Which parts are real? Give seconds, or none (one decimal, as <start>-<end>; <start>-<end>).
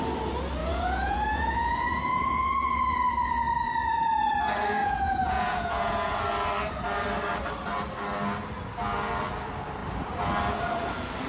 0.0-0.6; 2.5-4.8; 6.2-11.3